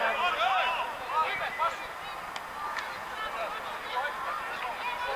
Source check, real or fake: real